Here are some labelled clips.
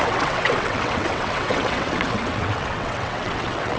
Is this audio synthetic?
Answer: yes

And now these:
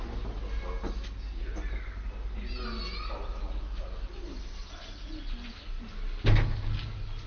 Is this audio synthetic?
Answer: no